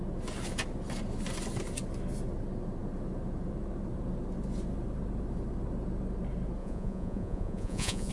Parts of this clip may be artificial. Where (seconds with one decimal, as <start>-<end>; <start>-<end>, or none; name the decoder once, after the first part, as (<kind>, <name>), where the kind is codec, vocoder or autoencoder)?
6.6-8.1 (vocoder, Vocos)